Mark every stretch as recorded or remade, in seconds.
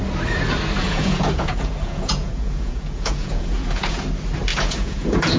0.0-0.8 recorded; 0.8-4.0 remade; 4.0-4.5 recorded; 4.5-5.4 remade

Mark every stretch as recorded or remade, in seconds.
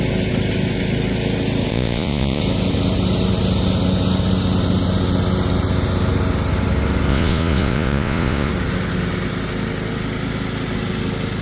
0.0-1.7 recorded; 1.7-2.4 remade; 2.4-7.1 recorded; 7.1-8.5 remade; 8.5-11.4 recorded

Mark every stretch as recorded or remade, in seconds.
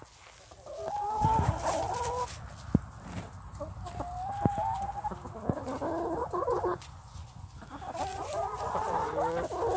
0.0-6.2 recorded; 6.2-7.5 remade; 7.5-8.1 recorded; 8.1-9.1 remade; 9.1-9.8 recorded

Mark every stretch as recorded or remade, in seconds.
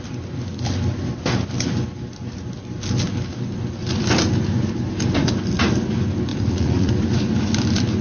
0.0-6.3 recorded; 6.3-6.9 remade; 6.9-8.0 recorded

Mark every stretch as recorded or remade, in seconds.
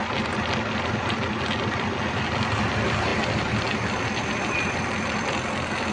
0.0-5.9 recorded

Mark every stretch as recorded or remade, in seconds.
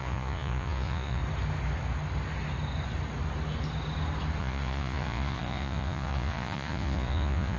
0.0-1.2 remade; 1.2-4.4 recorded; 4.4-7.6 remade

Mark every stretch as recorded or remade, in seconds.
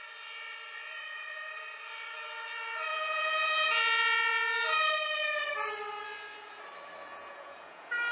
0.0-2.9 recorded; 2.9-3.8 remade; 3.8-7.1 recorded; 7.1-8.1 remade